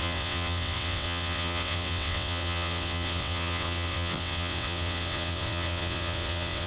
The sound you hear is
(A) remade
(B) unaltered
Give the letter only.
A